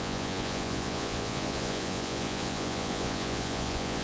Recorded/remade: remade